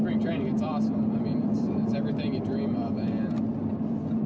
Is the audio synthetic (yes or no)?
no